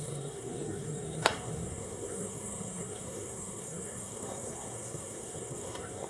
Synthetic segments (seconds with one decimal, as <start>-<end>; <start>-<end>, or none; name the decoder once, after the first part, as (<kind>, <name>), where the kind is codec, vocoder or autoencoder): 0.0-6.1 (codec, SNAC)